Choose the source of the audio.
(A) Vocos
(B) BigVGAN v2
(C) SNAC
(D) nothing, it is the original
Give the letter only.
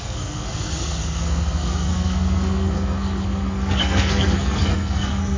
C